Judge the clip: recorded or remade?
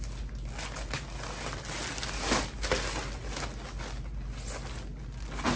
recorded